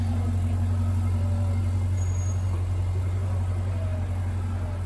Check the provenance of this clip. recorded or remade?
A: recorded